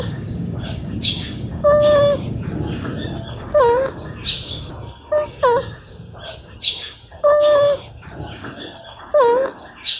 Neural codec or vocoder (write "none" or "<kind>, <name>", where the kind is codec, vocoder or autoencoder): codec, DAC